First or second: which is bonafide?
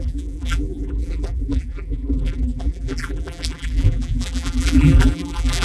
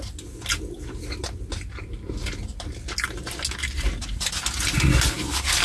second